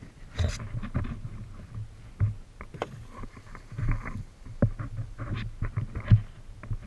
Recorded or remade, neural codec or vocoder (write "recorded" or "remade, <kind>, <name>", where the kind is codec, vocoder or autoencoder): recorded